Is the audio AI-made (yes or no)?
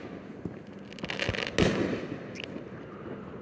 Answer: no